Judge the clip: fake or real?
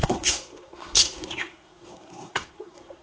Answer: fake